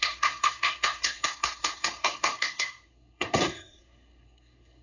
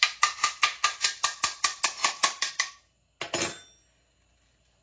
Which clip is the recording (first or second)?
second